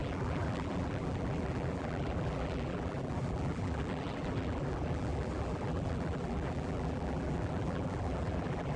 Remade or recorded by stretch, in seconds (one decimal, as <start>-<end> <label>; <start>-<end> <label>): 0.0-8.8 remade